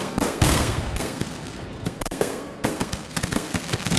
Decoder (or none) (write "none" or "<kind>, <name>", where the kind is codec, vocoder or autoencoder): codec, SNAC